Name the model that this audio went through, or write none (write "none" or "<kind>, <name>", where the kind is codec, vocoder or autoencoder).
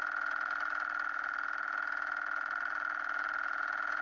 none